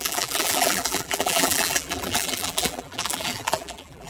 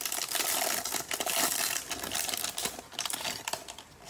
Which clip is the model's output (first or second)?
first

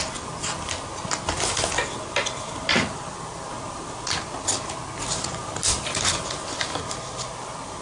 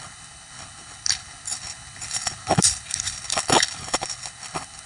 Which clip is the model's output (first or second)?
second